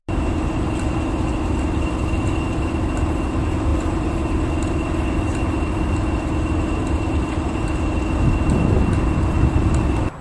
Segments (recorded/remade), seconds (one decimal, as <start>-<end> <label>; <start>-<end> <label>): 0.0-3.7 recorded; 3.7-4.2 remade; 4.2-10.2 recorded